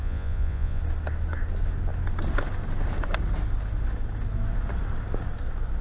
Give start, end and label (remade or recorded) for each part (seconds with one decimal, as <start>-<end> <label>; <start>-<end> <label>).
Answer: 0.0-0.8 remade; 0.8-5.8 recorded